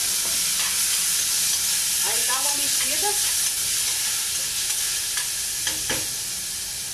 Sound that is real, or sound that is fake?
real